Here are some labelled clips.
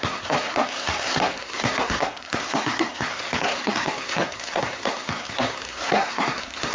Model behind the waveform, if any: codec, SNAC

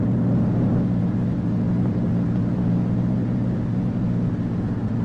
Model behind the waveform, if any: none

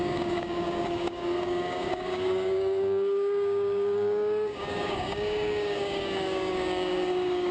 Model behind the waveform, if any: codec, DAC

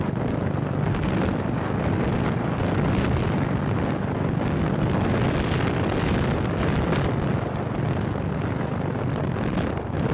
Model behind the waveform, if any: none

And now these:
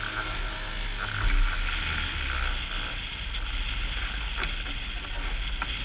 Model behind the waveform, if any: none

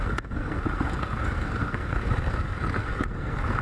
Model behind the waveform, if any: codec, SNAC